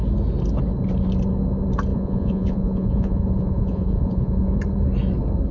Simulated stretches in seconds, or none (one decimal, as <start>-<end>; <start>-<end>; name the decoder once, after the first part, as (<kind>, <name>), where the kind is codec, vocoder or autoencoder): 1.9-4.6 (vocoder, Vocos)